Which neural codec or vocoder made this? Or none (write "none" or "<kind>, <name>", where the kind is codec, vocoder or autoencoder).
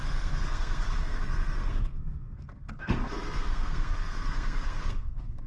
codec, SNAC